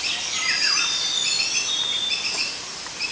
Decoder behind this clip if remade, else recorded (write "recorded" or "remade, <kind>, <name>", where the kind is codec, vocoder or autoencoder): recorded